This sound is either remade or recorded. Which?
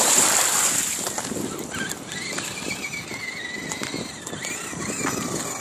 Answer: remade